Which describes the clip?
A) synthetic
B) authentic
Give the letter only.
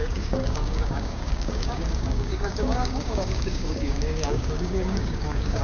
A